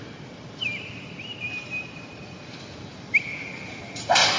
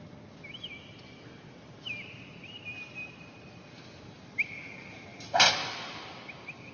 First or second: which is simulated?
first